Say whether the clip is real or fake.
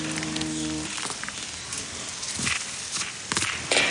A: real